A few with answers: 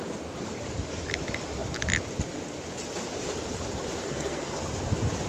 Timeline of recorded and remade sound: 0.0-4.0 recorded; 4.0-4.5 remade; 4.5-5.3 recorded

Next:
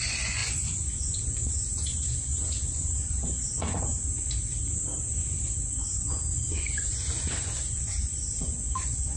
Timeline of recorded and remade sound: 0.0-3.9 remade; 3.9-5.6 recorded; 5.6-9.2 remade

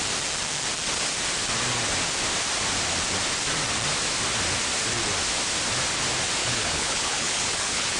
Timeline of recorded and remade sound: 0.0-6.4 recorded; 6.4-8.0 remade

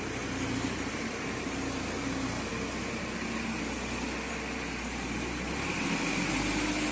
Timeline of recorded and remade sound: 0.0-6.9 recorded

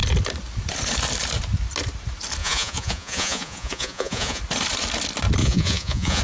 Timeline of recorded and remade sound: 0.0-2.4 recorded; 2.4-4.4 remade; 4.4-5.4 recorded; 5.4-6.2 remade

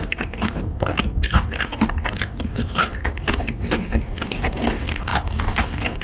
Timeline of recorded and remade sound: 0.0-6.0 remade